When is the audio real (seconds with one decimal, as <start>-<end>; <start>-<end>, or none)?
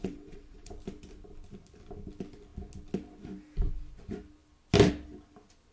0.7-5.7